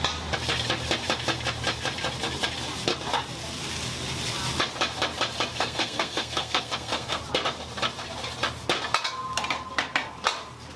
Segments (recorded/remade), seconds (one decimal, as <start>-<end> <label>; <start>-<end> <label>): 0.0-5.5 recorded; 5.5-7.2 remade; 7.2-10.8 recorded